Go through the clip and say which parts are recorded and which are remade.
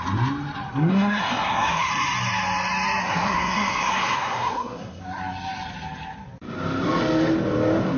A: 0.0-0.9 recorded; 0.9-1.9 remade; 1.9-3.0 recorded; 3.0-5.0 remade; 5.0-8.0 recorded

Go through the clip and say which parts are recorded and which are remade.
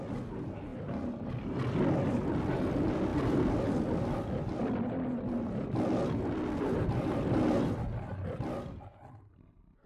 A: 0.0-9.9 recorded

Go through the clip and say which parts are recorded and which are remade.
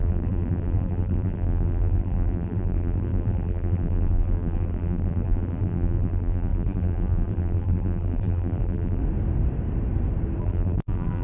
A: 0.0-9.0 remade; 9.0-10.4 recorded; 10.4-11.2 remade